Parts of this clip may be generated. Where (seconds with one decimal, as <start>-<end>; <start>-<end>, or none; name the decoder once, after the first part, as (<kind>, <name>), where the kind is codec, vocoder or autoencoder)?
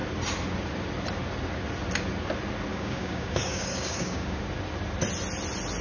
2.7-4.4 (codec, DAC)